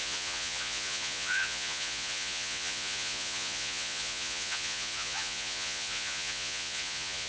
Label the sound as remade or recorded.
remade